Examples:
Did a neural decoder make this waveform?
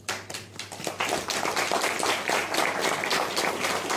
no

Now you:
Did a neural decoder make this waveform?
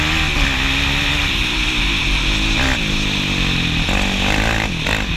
no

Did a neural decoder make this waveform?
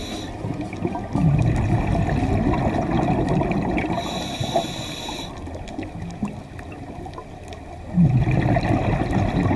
no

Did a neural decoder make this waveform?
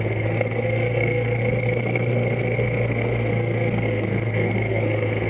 yes